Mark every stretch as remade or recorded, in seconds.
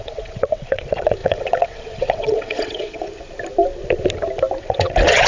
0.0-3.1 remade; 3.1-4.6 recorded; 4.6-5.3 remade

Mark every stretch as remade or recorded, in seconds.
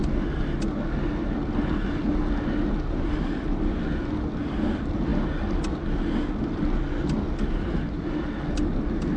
0.0-9.2 recorded